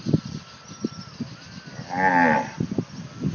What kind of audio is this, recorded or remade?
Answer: recorded